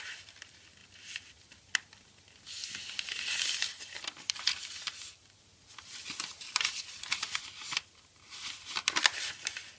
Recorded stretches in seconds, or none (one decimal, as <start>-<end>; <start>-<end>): 0.0-9.8